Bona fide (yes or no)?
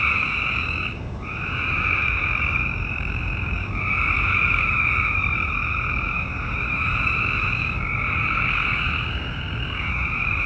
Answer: no